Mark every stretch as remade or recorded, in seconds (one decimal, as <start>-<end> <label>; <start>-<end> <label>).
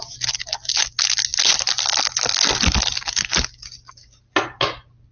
0.0-5.1 recorded